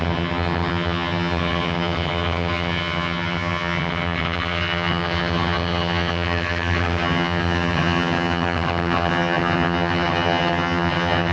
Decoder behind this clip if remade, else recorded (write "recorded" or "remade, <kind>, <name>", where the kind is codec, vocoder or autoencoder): remade, vocoder, HiFi-GAN